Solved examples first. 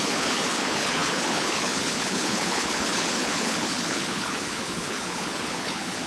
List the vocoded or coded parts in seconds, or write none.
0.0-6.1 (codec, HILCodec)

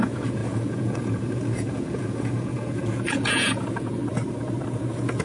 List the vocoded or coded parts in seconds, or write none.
0.0-4.0 (vocoder, Vocos); 4.7-5.2

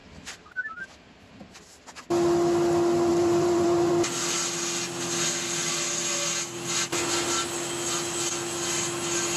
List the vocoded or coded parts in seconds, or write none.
3.1-3.9 (vocoder, BigVGAN v2)